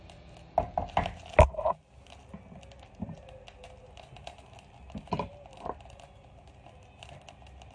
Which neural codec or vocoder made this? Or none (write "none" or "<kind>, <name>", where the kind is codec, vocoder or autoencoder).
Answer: none